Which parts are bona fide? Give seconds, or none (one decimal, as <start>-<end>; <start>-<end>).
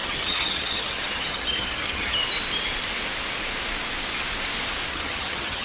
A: 2.2-4.9